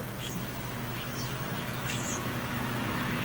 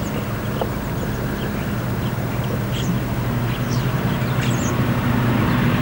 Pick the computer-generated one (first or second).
first